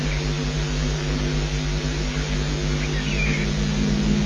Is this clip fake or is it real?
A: real